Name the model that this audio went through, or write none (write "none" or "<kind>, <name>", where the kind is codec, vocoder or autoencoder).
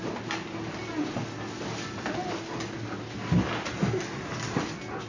none